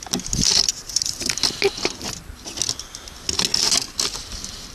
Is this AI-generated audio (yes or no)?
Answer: no